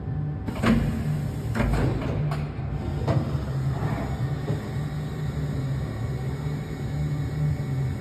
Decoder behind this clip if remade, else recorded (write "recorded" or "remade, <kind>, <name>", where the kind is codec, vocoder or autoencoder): recorded